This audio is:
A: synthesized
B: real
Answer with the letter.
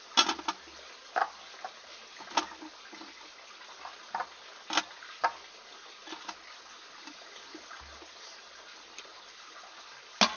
B